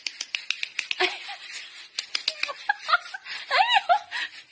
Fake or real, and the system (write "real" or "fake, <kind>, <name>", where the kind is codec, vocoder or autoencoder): real